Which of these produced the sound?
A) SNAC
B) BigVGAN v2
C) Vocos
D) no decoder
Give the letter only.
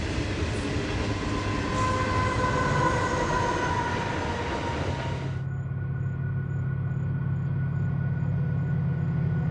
D